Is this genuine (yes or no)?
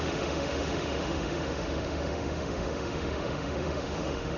no